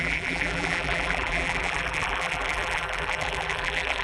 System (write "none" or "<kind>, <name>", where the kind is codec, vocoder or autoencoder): vocoder, BigVGAN v2